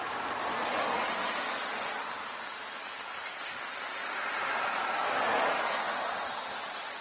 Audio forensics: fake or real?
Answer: real